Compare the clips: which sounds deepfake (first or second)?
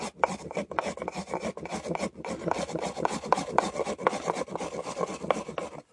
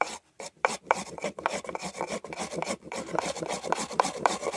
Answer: second